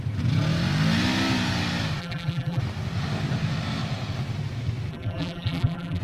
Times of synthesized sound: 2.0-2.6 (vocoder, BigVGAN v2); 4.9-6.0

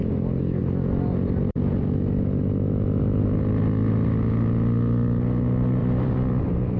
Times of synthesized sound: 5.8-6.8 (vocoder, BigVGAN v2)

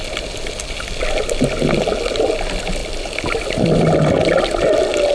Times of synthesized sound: 2.8-3.4 (vocoder, BigVGAN v2)

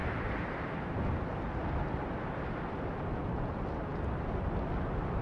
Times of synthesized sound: 0.0-1.0 (vocoder, BigVGAN v2)

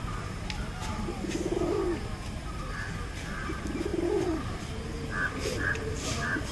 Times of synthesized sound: 3.9-4.6 (vocoder, BigVGAN v2)

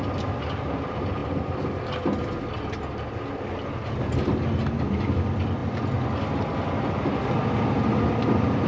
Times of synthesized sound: 5.6-7.3 (vocoder, BigVGAN v2)

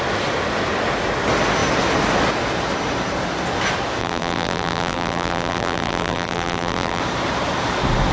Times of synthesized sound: 4.0-7.0 (vocoder, BigVGAN v2)

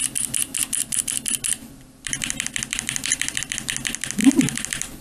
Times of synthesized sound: 1.6-3.4 (vocoder, BigVGAN v2); 4.2-5.0